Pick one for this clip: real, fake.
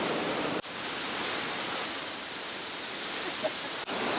real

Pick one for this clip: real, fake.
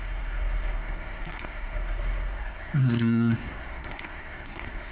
fake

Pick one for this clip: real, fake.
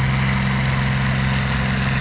real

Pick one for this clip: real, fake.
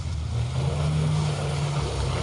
real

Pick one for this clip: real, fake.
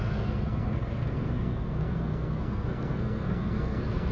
fake